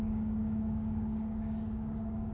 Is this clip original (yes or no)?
no